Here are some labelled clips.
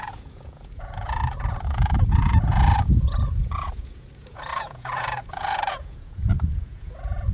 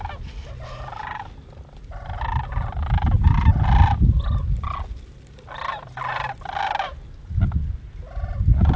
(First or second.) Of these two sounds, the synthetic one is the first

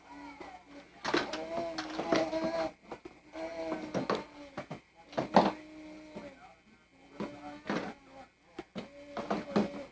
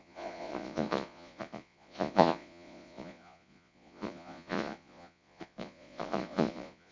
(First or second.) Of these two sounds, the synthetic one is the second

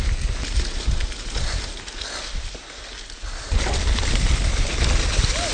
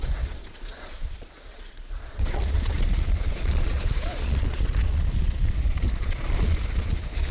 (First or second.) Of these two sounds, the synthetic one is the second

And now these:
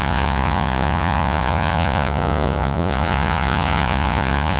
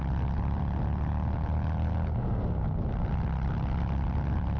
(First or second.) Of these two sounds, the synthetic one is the first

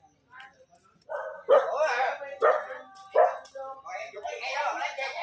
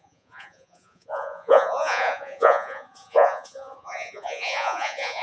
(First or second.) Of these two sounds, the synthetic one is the second